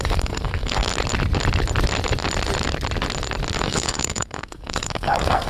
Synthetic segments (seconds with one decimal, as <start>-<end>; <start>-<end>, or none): 0.0-0.9; 3.6-5.5